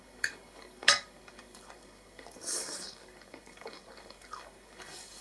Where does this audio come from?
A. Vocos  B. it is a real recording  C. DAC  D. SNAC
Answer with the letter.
C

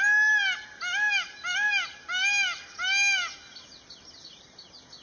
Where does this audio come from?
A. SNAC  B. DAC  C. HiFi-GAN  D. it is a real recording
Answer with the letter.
D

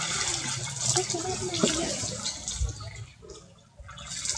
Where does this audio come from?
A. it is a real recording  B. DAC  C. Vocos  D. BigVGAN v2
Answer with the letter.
A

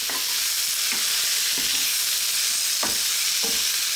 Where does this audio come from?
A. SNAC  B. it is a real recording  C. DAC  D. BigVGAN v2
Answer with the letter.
B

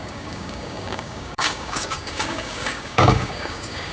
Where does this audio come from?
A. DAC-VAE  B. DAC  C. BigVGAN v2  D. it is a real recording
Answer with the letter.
B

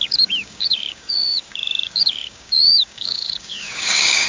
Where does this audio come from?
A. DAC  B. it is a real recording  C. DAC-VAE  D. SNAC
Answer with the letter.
A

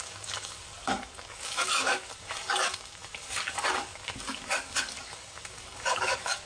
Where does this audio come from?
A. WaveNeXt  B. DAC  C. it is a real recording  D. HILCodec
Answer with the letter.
B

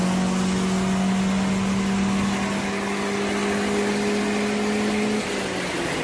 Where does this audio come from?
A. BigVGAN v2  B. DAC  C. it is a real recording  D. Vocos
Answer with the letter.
C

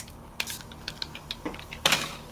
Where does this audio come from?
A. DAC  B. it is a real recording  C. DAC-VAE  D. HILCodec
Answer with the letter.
A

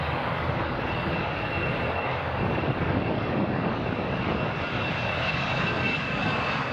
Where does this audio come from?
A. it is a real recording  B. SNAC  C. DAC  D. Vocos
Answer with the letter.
C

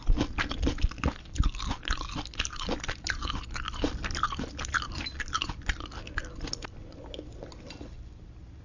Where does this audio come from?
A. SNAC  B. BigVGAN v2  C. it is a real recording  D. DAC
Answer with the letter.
C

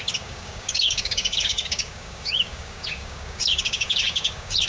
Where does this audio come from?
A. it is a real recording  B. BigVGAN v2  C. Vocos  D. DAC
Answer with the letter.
D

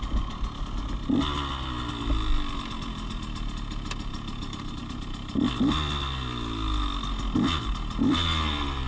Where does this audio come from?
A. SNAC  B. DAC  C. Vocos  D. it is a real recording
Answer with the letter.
D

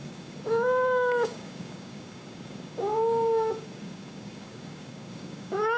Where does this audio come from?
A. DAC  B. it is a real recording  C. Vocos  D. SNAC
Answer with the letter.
A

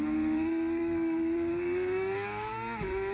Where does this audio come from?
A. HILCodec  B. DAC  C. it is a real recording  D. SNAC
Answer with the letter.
B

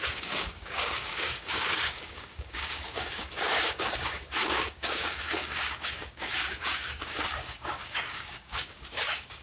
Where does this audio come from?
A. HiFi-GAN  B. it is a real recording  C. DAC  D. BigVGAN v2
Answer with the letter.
C